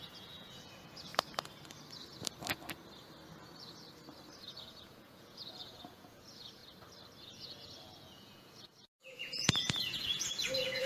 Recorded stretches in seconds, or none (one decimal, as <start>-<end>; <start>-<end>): 1.1-4.4; 6.6-7.2